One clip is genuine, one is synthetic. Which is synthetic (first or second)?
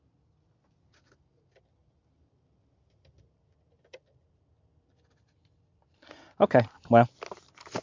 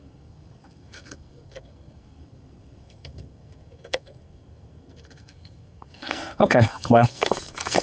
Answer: second